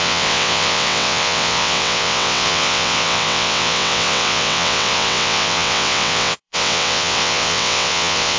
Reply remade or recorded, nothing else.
remade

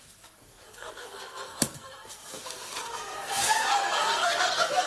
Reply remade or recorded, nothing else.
remade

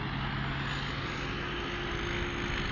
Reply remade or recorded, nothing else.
recorded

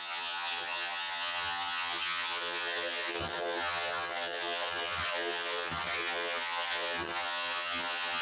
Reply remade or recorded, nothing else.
remade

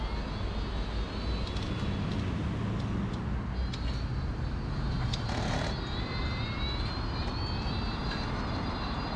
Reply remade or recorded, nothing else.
recorded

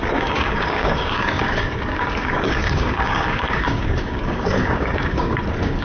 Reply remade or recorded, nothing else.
remade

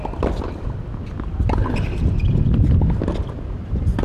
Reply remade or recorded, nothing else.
recorded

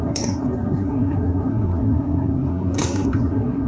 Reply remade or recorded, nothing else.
remade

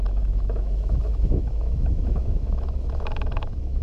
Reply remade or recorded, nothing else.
remade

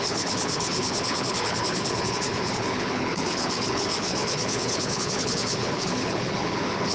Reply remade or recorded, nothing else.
remade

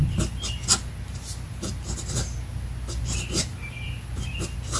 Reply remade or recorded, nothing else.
recorded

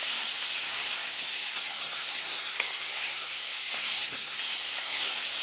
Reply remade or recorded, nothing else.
remade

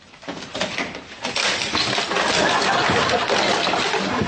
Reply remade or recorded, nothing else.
recorded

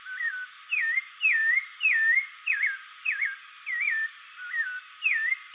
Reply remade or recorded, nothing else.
recorded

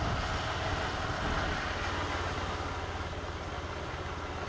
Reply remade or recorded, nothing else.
recorded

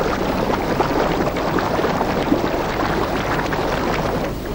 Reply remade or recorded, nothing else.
recorded